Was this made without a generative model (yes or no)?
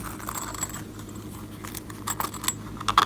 yes